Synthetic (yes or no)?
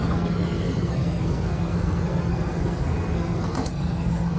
yes